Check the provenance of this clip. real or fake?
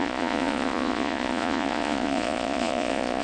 fake